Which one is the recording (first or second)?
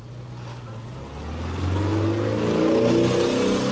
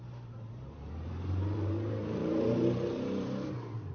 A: first